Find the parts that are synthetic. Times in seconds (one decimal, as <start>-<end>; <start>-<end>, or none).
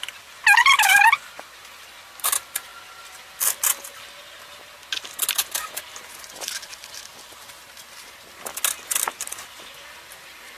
none